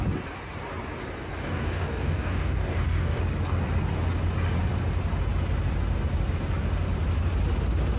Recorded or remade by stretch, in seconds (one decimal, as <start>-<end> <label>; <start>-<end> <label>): 0.0-1.4 recorded; 1.4-3.2 remade; 3.2-8.0 recorded